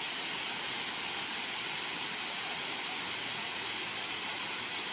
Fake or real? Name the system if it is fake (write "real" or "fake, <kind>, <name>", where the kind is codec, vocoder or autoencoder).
real